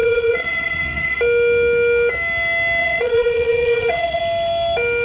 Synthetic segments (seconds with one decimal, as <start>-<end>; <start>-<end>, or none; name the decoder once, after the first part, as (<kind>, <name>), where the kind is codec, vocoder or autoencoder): 0.0-1.2 (vocoder, Vocos); 2.8-4.2

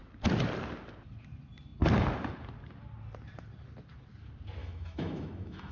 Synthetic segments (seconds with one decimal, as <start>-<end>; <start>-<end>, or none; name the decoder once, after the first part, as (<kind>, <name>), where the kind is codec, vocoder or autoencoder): 4.6-5.7 (autoencoder, DAC-VAE)

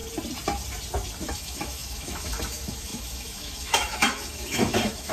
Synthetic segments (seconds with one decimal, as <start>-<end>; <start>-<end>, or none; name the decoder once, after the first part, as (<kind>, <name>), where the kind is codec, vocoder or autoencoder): 1.2-5.1 (autoencoder, DAC-VAE)

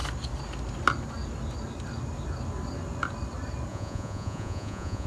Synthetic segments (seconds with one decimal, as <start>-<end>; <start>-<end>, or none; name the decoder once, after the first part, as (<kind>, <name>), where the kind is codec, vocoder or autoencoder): 3.7-5.1 (vocoder, Vocos)

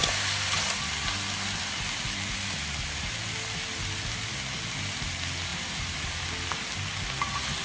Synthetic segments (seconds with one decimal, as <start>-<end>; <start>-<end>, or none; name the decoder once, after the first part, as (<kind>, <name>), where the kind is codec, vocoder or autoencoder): none